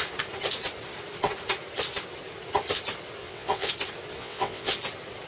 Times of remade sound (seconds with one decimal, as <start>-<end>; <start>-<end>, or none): 3.2-3.7; 4.2-4.7